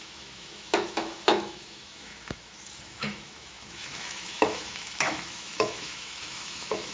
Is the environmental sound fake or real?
fake